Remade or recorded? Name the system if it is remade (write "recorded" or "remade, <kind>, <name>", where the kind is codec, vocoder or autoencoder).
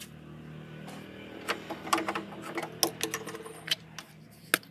recorded